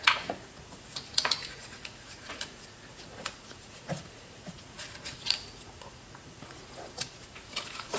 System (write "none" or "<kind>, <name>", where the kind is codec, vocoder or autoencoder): vocoder, Vocos